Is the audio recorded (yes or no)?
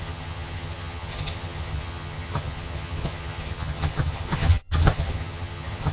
no